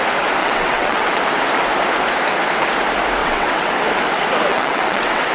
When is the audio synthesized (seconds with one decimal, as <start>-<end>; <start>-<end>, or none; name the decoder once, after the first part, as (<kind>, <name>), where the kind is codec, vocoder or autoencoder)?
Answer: 0.4-1.2 (vocoder, WaveNeXt); 3.2-3.7; 4.5-5.3